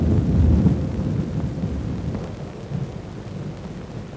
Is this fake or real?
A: real